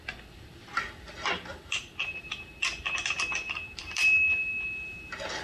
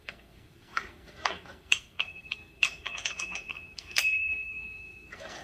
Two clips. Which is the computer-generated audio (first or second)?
second